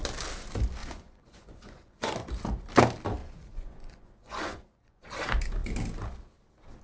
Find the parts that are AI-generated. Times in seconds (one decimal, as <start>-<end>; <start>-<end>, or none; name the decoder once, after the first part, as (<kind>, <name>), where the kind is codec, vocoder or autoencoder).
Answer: 0.8-2.3 (vocoder, Vocos); 3.2-5.0